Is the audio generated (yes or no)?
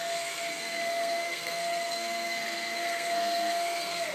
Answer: yes